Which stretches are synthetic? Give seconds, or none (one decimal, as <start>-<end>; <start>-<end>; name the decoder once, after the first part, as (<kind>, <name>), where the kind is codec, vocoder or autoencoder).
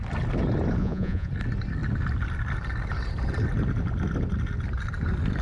0.8-1.3 (vocoder, Vocos)